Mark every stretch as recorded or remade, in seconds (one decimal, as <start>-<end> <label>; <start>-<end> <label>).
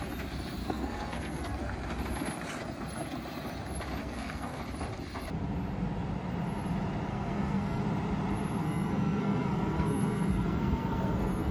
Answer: 0.0-0.6 recorded; 0.6-1.6 remade; 1.6-4.0 recorded; 4.0-4.6 remade; 4.6-7.1 recorded; 7.1-7.8 remade; 7.8-8.6 recorded; 8.6-11.5 remade